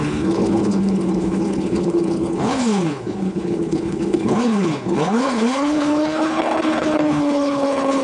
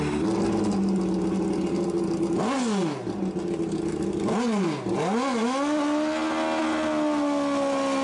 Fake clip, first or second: first